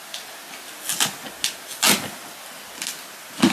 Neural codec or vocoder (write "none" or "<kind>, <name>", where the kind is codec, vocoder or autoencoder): none